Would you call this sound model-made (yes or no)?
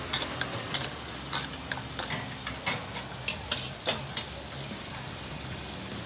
no